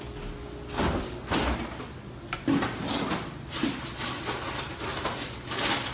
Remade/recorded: recorded